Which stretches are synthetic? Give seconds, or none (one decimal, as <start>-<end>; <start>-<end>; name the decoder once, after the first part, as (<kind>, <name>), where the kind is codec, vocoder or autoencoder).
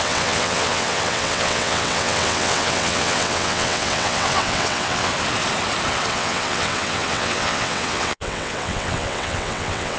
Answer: 0.0-5.1 (vocoder, WaveNeXt); 6.1-10.0